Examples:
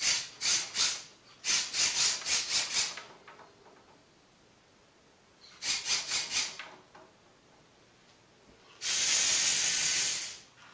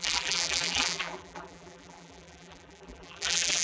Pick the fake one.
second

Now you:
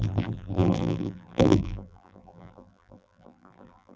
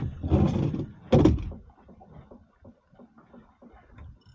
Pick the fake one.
first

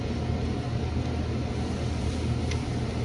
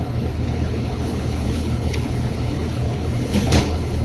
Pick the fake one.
second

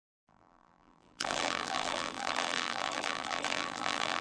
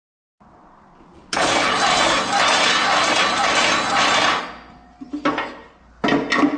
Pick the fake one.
first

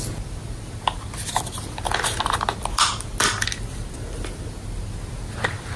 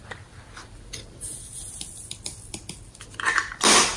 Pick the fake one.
second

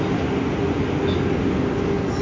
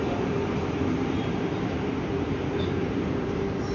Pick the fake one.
second